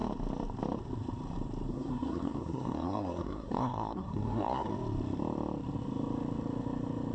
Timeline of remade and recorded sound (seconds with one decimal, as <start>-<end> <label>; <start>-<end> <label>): 0.0-1.7 recorded; 1.7-4.7 remade; 4.7-7.1 recorded